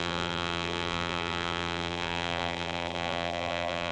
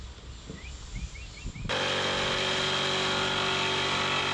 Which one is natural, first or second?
second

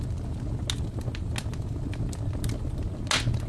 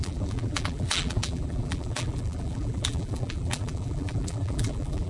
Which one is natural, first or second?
first